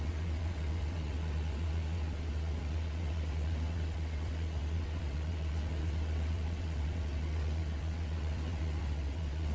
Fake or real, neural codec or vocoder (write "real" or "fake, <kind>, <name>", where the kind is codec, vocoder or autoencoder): fake, vocoder, WaveNeXt